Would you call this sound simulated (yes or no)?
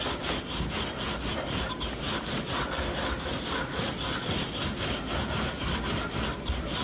no